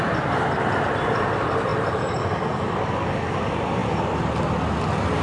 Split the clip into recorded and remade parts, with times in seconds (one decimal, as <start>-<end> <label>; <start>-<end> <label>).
0.0-5.2 recorded